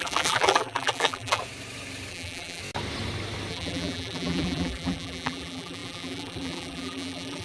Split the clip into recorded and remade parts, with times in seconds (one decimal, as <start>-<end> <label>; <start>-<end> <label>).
0.0-1.4 remade; 1.4-2.1 recorded; 2.1-2.6 remade; 2.6-3.5 recorded; 3.5-7.4 remade